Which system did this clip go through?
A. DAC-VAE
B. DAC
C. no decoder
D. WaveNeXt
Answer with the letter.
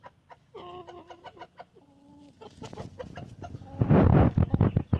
C